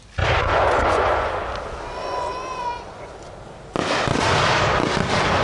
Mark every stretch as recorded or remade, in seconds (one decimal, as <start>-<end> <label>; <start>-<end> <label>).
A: 0.0-0.4 recorded; 0.4-1.3 remade; 1.3-2.0 recorded; 2.0-3.1 remade; 3.1-5.4 recorded